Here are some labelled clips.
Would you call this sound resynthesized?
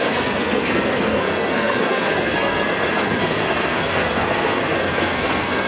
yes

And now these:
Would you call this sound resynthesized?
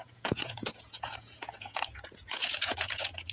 yes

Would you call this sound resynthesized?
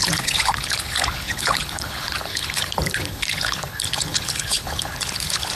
yes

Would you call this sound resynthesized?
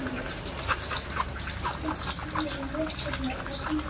no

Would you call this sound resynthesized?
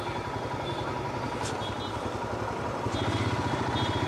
yes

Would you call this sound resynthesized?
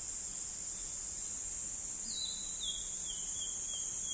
no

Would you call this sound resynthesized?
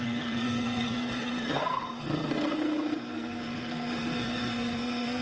yes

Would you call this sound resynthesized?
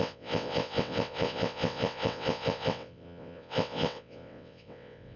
yes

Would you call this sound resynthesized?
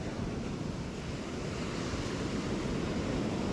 no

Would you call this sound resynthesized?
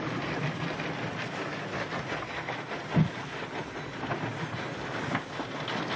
no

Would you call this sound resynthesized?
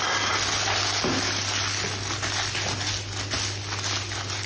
no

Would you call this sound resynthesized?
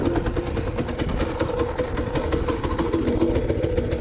no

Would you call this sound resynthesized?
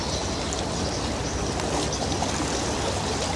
no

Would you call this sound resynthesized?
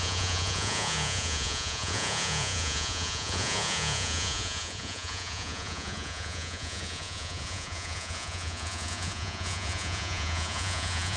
yes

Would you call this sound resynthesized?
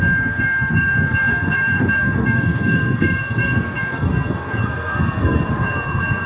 yes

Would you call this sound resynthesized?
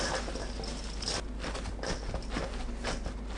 no